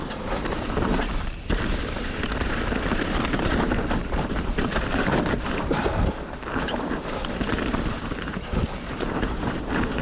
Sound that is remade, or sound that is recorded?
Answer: remade